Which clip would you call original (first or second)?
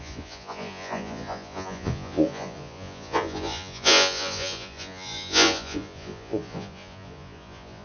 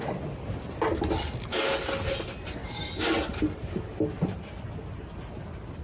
second